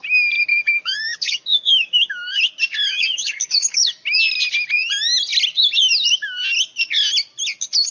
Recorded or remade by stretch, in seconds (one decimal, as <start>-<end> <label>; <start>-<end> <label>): 0.0-0.5 recorded; 0.5-2.4 remade; 2.4-2.9 recorded; 2.9-3.9 remade; 3.9-7.9 recorded